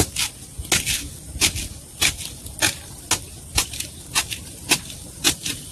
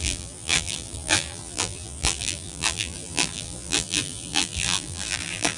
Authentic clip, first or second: first